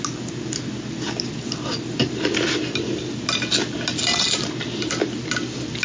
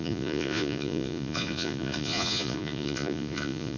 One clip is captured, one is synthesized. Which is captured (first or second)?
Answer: first